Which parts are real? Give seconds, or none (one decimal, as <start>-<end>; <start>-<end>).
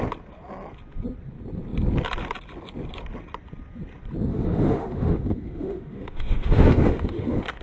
0.0-4.3